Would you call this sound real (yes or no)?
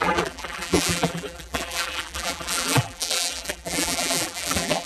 no